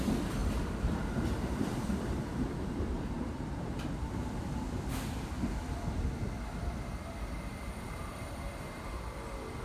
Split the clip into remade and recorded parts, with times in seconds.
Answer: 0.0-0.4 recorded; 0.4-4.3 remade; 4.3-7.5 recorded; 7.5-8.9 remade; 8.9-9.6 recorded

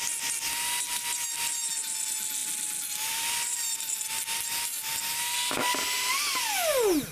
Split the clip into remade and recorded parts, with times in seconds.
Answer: 0.0-0.9 recorded; 0.9-1.5 remade; 1.5-2.4 recorded; 2.4-4.0 remade; 4.0-7.1 recorded

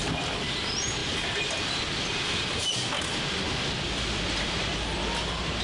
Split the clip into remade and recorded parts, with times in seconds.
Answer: 0.0-1.0 recorded; 1.0-1.8 remade; 1.8-2.6 recorded; 2.6-4.7 remade; 4.7-5.6 recorded

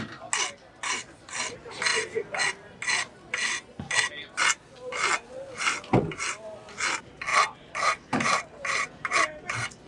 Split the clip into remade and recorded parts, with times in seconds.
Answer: 0.0-1.9 recorded; 1.9-2.4 remade; 2.4-7.3 recorded; 7.3-9.4 remade; 9.4-9.9 recorded